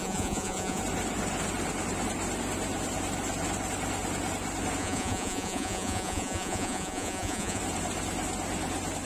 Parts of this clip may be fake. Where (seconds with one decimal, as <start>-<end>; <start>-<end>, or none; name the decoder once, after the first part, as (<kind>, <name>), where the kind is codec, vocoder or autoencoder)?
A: 0.0-0.8 (vocoder, Vocos); 4.8-7.6